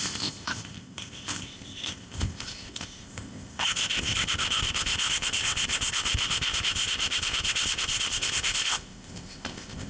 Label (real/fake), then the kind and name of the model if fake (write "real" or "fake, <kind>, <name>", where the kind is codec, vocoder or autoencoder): fake, codec, ZipCodec